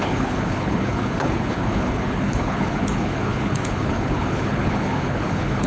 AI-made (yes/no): yes